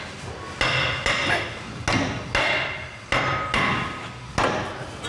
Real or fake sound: real